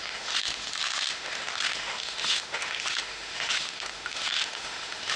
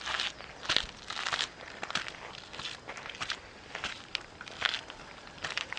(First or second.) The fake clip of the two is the first